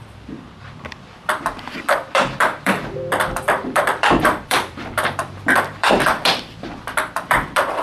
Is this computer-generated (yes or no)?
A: yes